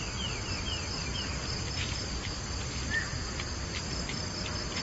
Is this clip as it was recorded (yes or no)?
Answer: yes